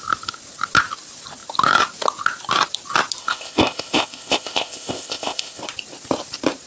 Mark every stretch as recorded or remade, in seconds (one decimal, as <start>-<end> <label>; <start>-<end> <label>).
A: 0.0-3.2 recorded; 3.2-5.6 remade; 5.6-6.7 recorded